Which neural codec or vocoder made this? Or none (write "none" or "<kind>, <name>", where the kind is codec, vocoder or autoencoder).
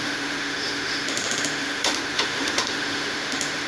autoencoder, DAC-VAE